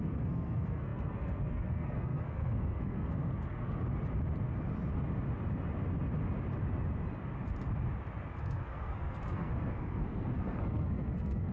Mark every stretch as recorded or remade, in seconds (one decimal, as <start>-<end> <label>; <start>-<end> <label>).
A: 0.0-3.9 remade; 3.9-8.4 recorded; 8.4-11.5 remade

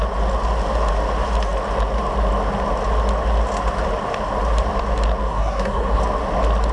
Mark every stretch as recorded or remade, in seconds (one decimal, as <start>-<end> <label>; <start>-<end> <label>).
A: 0.0-5.3 recorded; 5.3-6.0 remade; 6.0-6.7 recorded

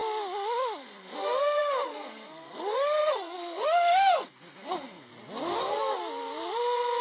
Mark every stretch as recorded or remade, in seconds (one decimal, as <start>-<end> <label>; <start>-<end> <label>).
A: 0.0-0.8 recorded; 0.8-5.1 remade; 5.1-5.6 recorded; 5.6-6.0 remade; 6.0-7.0 recorded

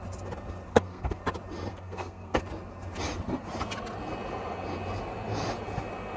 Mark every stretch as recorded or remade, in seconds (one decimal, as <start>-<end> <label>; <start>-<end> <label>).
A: 0.0-0.7 recorded; 0.7-1.2 remade; 1.2-1.7 recorded; 1.7-2.4 remade; 2.4-6.2 recorded

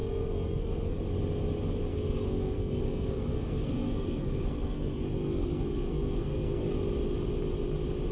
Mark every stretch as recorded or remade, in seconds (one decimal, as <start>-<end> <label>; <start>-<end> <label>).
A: 0.0-1.0 remade; 1.0-1.9 recorded; 1.9-6.8 remade; 6.8-8.1 recorded